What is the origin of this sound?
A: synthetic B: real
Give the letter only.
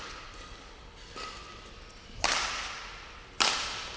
B